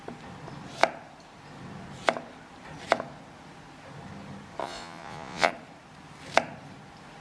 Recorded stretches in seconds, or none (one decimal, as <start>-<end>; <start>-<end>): 0.0-4.6; 5.5-7.2